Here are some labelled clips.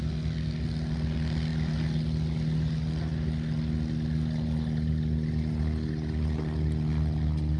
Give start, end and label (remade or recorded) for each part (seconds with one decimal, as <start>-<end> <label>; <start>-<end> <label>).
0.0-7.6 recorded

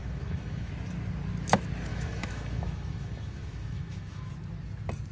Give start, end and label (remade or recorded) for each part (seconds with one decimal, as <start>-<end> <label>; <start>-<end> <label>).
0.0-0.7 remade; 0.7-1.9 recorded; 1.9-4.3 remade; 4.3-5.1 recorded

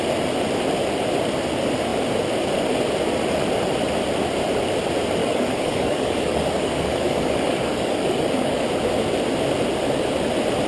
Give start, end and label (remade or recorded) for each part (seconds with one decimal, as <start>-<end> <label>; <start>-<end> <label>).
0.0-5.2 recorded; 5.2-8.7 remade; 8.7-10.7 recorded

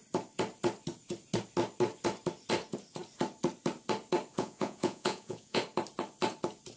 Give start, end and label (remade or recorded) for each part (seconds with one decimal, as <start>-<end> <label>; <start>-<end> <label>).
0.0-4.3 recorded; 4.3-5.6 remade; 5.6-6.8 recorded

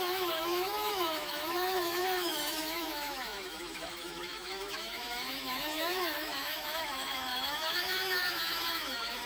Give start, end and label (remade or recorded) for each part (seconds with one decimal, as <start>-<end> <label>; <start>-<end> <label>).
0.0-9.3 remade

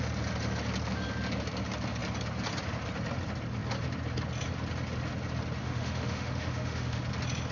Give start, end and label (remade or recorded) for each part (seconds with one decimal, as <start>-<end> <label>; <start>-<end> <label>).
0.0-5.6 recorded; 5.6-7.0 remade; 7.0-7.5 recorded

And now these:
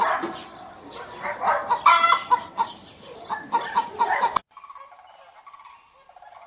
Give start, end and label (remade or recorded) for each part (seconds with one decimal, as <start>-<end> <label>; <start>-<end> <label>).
0.0-0.4 recorded; 0.4-4.3 remade; 4.3-6.5 recorded